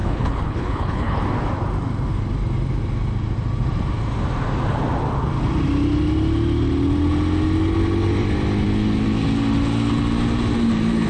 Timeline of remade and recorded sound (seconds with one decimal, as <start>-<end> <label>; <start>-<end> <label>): 0.0-1.2 remade; 1.2-11.1 recorded